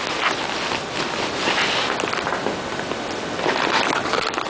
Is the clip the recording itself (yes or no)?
yes